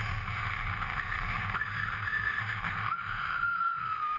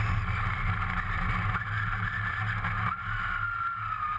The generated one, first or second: first